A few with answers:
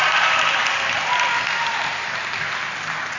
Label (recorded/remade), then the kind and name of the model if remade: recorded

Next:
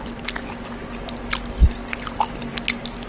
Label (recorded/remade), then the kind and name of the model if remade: recorded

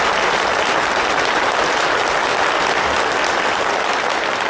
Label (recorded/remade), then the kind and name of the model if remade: recorded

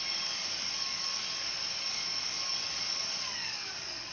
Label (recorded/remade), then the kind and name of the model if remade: remade, codec, DAC